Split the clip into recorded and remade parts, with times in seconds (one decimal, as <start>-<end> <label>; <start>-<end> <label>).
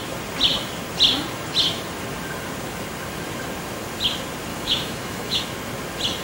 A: 0.0-4.5 recorded; 4.5-5.4 remade; 5.4-6.2 recorded